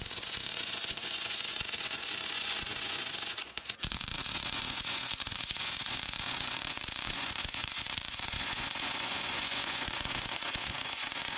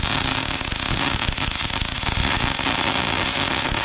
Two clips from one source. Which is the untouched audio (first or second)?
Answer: second